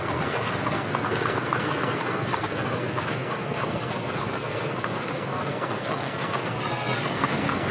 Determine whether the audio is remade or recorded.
remade